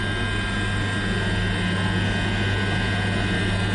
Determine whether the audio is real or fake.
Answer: real